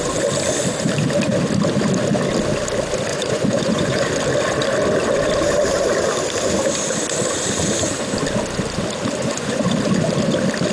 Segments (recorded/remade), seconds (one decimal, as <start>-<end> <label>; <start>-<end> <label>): 0.0-3.1 recorded; 3.1-4.1 remade; 4.1-9.2 recorded; 9.2-9.7 remade; 9.7-10.7 recorded